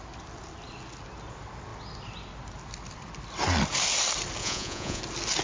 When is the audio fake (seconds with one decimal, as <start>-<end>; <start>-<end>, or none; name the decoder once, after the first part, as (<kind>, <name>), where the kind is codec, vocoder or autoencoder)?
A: 4.4-5.0 (vocoder, Vocos)

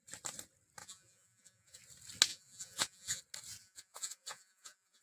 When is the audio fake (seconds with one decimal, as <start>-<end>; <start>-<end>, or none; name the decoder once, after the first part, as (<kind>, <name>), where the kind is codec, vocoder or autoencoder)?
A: 0.8-1.8 (vocoder, Vocos); 2.3-3.2; 3.6-5.0

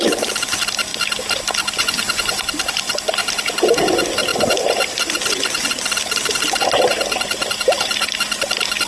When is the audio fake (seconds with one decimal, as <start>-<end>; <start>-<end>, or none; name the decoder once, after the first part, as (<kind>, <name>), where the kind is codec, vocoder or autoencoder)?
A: 1.8-2.4 (vocoder, Vocos)

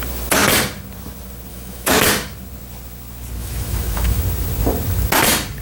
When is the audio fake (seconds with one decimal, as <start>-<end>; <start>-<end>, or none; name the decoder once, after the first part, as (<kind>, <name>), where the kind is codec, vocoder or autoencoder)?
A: 1.5-2.0 (autoencoder, DAC-VAE); 3.4-4.2